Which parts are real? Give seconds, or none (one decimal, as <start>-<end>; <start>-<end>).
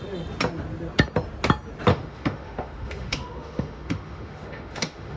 0.0-1.9